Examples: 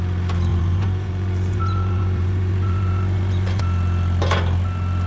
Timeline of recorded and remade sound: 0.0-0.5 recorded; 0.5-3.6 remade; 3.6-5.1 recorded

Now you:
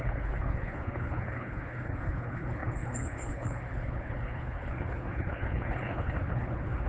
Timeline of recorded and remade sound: 0.0-6.9 remade

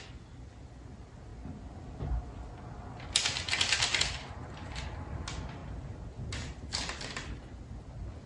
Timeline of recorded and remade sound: 0.0-8.3 recorded